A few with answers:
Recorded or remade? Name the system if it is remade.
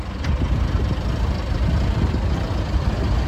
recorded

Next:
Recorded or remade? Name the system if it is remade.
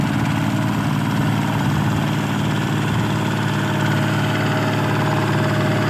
recorded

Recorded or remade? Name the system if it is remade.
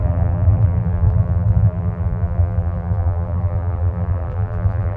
remade, vocoder, BigVGAN v2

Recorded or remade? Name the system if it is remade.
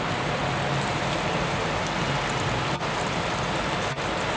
recorded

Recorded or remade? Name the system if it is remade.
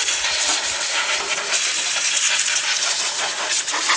recorded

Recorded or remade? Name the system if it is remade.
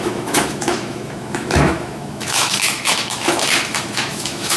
remade, autoencoder, DAC-VAE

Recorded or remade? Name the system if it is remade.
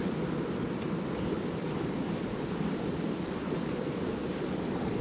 recorded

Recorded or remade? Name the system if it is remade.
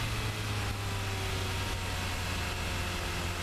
recorded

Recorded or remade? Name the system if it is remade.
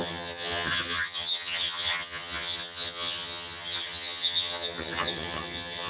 remade, vocoder, HiFi-GAN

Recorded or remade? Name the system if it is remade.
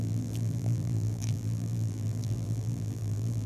remade, vocoder, BigVGAN v2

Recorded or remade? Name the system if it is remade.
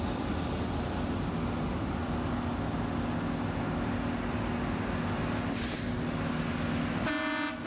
recorded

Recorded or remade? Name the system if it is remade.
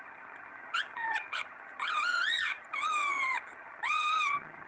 remade, vocoder, HiFi-GAN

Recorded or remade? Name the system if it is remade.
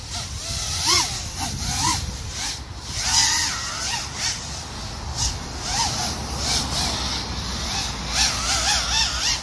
recorded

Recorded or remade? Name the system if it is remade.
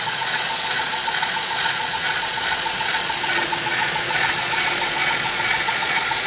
remade, vocoder, Vocos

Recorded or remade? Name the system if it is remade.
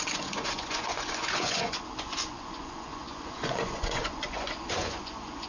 remade, vocoder, Vocos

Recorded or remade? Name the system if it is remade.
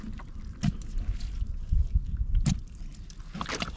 recorded